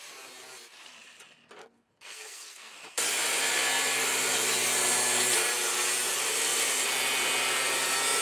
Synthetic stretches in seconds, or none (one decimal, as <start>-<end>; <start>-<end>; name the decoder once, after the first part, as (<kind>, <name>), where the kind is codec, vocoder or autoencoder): 1.6-3.0 (codec, SNAC)